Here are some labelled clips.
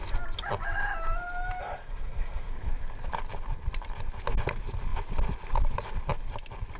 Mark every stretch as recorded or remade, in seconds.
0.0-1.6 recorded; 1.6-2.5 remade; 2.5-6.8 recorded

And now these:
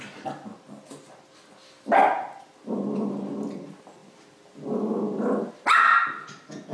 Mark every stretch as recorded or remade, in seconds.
0.0-6.7 recorded

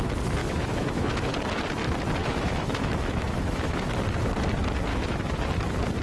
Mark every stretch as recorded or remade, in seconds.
0.0-0.4 recorded; 0.4-1.3 remade; 1.3-2.2 recorded; 2.2-3.9 remade; 3.9-4.9 recorded; 4.9-5.5 remade; 5.5-6.0 recorded

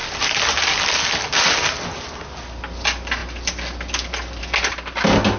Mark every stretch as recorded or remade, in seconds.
0.0-5.4 recorded

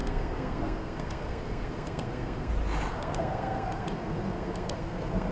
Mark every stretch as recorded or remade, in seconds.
0.0-2.5 remade; 2.5-2.9 recorded; 2.9-5.3 remade

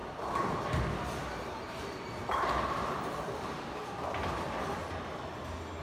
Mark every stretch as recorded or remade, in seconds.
0.0-1.6 recorded; 1.6-3.7 remade; 3.7-5.8 recorded

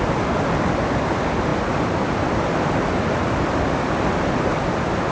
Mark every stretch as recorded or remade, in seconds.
0.0-5.1 recorded

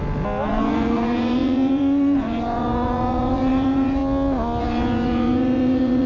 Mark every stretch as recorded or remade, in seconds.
0.0-0.5 recorded; 0.5-4.0 remade; 4.0-4.6 recorded; 4.6-6.1 remade